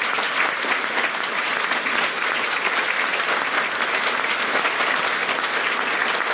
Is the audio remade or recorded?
recorded